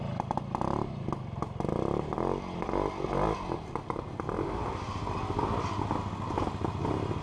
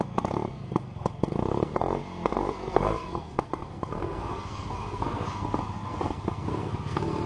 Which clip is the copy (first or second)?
second